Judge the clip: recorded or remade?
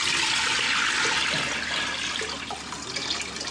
recorded